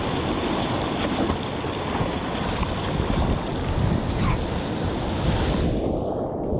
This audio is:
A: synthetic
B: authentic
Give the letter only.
B